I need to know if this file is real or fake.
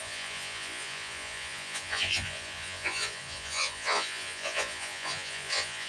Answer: fake